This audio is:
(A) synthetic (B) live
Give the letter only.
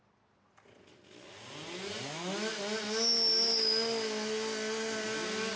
B